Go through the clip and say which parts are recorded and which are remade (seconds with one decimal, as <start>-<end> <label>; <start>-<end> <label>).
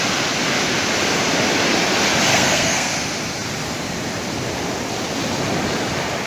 0.0-2.3 recorded; 2.3-2.9 remade; 2.9-6.3 recorded